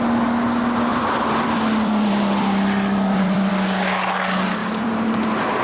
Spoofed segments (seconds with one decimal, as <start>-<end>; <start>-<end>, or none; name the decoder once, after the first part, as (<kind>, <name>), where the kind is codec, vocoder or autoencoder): 0.9-3.5 (vocoder, BigVGAN v2); 4.6-5.6